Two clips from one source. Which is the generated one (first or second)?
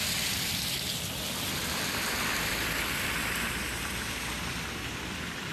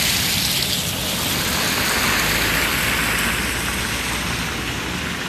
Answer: first